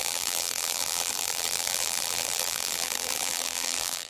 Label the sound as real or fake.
fake